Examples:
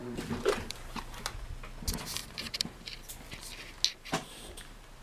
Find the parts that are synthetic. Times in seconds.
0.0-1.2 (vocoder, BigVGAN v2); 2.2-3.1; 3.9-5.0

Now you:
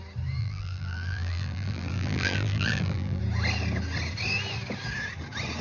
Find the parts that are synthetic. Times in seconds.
0.4-3.2 (vocoder, BigVGAN v2)

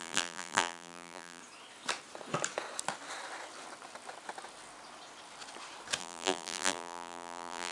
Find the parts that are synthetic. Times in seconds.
0.0-1.4 (vocoder, BigVGAN v2); 6.0-7.7

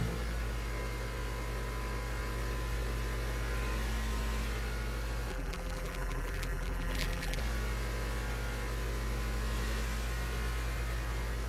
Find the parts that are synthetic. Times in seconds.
5.3-7.4 (vocoder, BigVGAN v2)

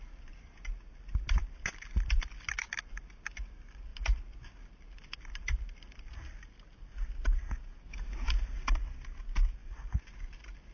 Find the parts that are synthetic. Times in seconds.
7.9-8.7 (vocoder, BigVGAN v2); 9.6-10.1

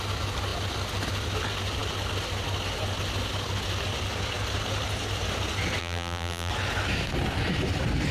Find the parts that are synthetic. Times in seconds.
5.8-6.5 (vocoder, BigVGAN v2)